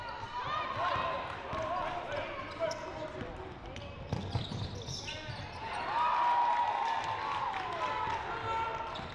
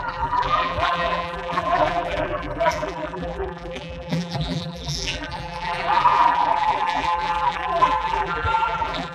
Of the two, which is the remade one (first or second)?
second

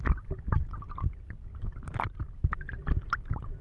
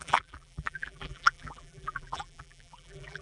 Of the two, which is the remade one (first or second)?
second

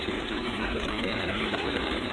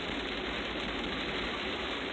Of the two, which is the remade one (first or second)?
first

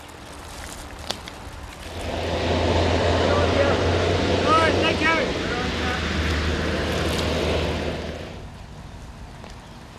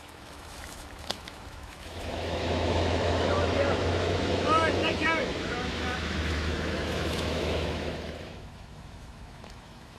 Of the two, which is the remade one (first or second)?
second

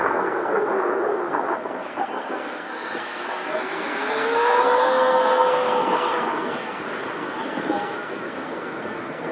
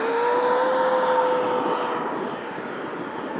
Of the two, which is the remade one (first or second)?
first